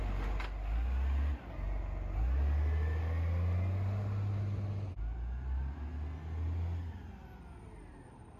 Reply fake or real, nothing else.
real